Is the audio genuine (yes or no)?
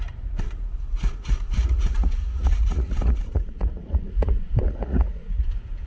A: no